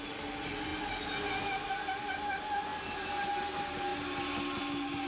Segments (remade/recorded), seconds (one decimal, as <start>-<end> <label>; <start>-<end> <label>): 0.0-5.1 recorded